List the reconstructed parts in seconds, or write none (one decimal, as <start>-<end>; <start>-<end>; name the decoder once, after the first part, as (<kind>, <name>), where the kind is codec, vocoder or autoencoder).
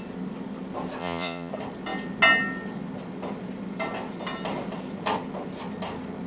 1.0-1.5 (vocoder, Vocos)